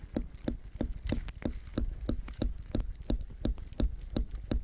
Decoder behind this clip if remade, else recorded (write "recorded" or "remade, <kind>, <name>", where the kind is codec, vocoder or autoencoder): recorded